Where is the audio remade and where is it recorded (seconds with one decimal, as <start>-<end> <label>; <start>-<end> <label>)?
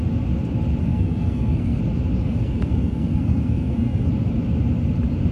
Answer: 0.0-0.8 recorded; 0.8-1.8 remade; 1.8-2.2 recorded; 2.2-4.1 remade; 4.1-5.3 recorded